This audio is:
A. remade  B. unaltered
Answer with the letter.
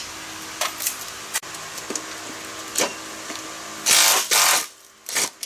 B